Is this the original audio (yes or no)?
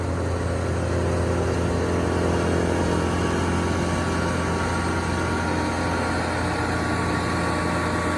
yes